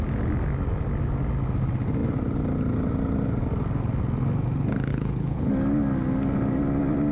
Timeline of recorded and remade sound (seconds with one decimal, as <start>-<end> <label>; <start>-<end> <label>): 0.0-4.9 recorded; 4.9-5.5 remade; 5.5-7.1 recorded